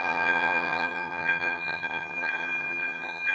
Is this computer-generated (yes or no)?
yes